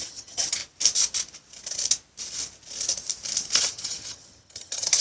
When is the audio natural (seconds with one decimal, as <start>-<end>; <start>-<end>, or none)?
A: 0.6-3.6